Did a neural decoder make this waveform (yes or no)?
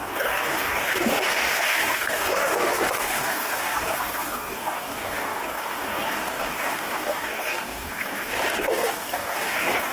yes